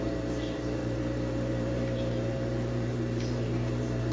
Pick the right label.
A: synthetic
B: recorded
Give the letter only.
A